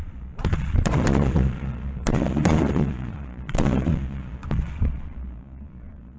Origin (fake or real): fake